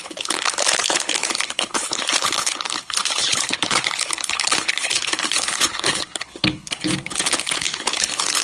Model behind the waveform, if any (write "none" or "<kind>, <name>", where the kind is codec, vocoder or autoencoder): codec, HILCodec